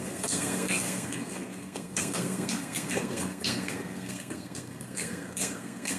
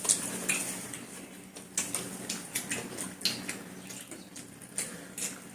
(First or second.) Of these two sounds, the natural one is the second